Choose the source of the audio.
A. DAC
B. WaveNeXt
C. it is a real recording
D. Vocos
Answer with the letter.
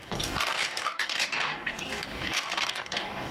A